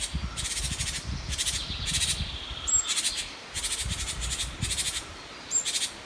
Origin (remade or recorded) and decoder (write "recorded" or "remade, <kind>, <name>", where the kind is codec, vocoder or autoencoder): recorded